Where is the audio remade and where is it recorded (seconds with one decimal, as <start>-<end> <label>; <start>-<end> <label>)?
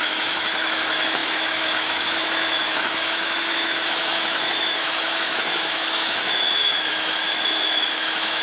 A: 0.0-8.4 remade